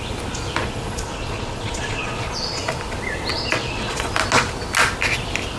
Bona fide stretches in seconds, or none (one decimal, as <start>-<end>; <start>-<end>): 0.0-0.6; 2.6-3.3; 4.1-5.6